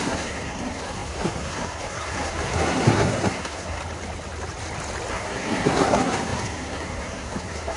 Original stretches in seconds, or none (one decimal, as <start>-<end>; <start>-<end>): 3.8-5.1